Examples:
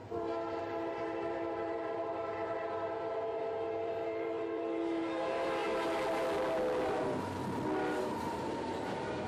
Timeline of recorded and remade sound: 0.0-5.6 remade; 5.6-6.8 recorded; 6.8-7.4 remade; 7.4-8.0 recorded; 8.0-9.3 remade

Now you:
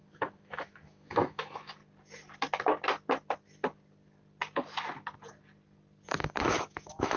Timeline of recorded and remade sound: 0.0-1.8 remade; 1.8-6.1 recorded; 6.1-7.2 remade

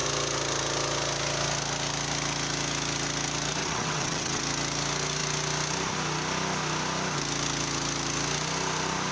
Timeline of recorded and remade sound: 0.0-3.6 recorded; 3.6-4.4 remade; 4.4-9.1 recorded

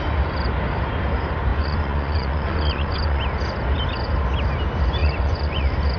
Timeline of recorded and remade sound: 0.0-1.5 recorded; 1.5-3.2 remade; 3.2-5.0 recorded; 5.0-6.0 remade

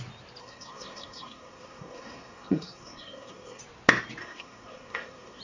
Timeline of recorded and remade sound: 0.0-0.4 recorded; 0.4-3.6 remade; 3.6-4.2 recorded; 4.2-5.4 remade

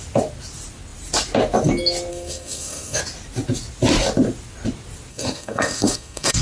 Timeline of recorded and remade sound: 0.0-2.1 recorded; 2.1-3.0 remade; 3.0-5.1 recorded; 5.1-6.4 remade

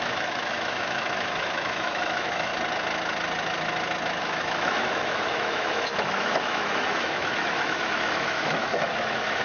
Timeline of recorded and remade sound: 0.0-2.5 remade; 2.5-4.2 recorded; 4.2-9.4 remade

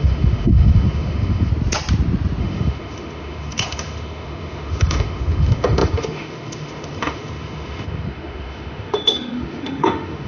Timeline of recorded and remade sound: 0.0-1.5 remade; 1.5-2.4 recorded; 2.4-10.3 remade